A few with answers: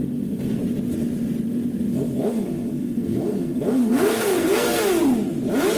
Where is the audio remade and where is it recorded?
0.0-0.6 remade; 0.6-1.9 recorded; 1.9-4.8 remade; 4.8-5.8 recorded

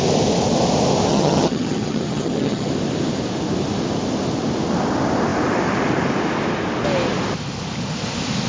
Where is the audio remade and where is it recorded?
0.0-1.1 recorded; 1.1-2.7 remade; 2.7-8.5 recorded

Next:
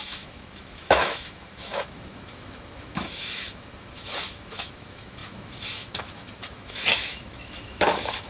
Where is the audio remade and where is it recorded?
0.0-8.3 remade

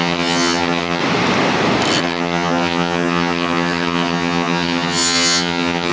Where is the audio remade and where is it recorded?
0.0-1.0 remade; 1.0-2.0 recorded; 2.0-5.9 remade

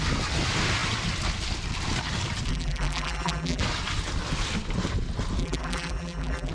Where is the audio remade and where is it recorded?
0.0-2.5 recorded; 2.5-3.6 remade; 3.6-5.4 recorded; 5.4-6.5 remade

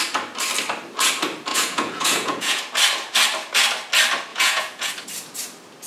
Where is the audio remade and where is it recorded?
0.0-1.5 recorded; 1.5-2.6 remade; 2.6-4.3 recorded; 4.3-4.9 remade; 4.9-5.9 recorded

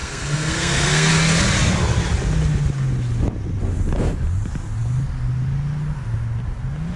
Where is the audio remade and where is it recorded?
0.0-1.1 remade; 1.1-7.0 recorded